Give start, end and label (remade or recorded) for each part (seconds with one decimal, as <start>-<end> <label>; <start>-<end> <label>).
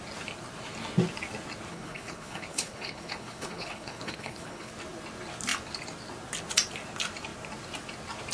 0.0-1.7 recorded; 1.7-4.7 remade; 4.7-8.3 recorded